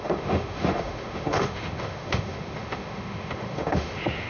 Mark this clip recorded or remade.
remade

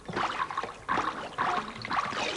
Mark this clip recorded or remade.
recorded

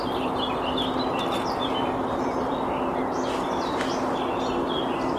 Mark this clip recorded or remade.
recorded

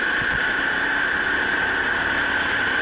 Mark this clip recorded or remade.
recorded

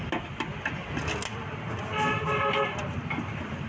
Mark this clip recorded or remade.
recorded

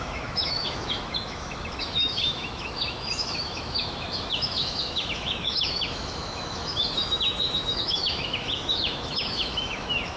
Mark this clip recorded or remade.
remade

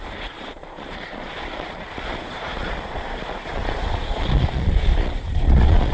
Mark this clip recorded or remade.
remade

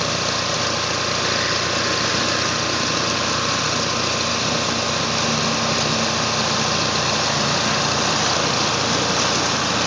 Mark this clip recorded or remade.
recorded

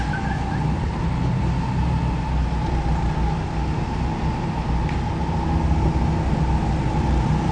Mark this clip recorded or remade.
recorded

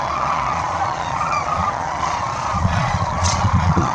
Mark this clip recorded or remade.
remade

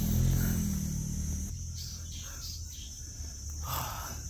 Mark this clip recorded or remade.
recorded